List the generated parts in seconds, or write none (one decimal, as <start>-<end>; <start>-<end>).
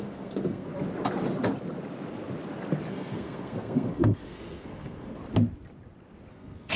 0.0-0.7; 2.9-5.2; 6.3-6.8